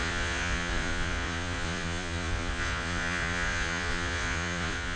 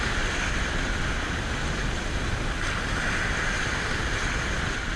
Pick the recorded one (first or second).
second